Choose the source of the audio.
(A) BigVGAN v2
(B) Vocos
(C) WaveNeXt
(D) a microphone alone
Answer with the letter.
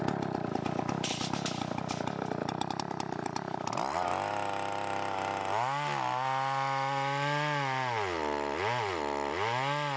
D